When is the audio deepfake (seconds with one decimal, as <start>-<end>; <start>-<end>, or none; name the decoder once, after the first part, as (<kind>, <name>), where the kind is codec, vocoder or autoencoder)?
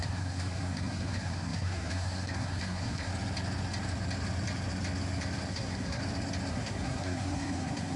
0.0-3.1 (codec, SNAC); 5.5-6.0; 6.5-8.0